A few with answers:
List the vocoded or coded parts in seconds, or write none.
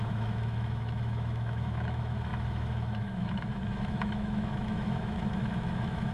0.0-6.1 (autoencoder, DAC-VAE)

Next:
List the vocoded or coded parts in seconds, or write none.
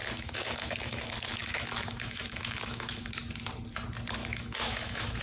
0.0-3.1 (autoencoder, DAC-VAE); 4.2-5.2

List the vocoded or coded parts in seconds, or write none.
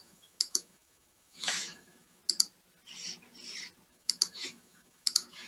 0.0-2.2 (autoencoder, DAC-VAE); 3.9-5.5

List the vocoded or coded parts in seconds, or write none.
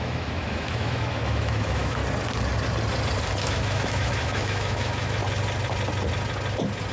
0.0-2.0 (autoencoder, DAC-VAE); 3.4-5.2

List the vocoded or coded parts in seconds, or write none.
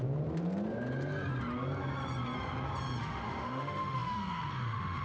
3.0-5.0 (autoencoder, DAC-VAE)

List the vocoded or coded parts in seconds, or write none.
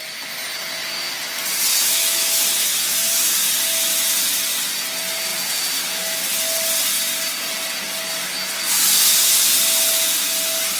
1.7-3.3 (autoencoder, DAC-VAE)